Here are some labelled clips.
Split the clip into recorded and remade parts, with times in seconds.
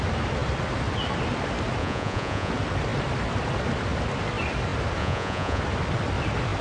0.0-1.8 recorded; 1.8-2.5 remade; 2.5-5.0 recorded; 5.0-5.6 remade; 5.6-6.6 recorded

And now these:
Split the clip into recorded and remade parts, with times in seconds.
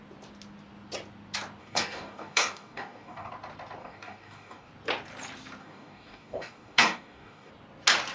0.0-1.6 recorded; 1.6-3.3 remade; 3.3-3.8 recorded; 3.8-4.7 remade; 4.7-5.6 recorded; 5.6-7.5 remade; 7.5-8.1 recorded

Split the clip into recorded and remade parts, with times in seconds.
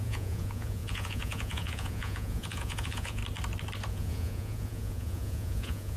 0.0-3.2 remade; 3.2-3.9 recorded; 3.9-6.0 remade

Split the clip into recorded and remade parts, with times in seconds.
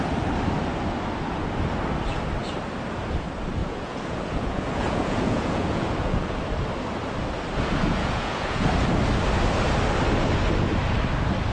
0.0-3.6 recorded; 3.6-6.4 remade; 6.4-7.9 recorded; 7.9-8.7 remade; 8.7-11.5 recorded